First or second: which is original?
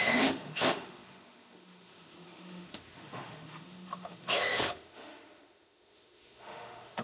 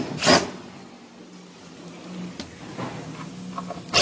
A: second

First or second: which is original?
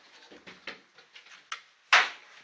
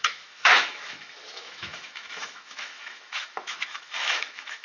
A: first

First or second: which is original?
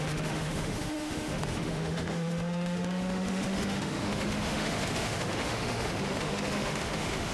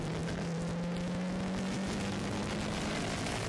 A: second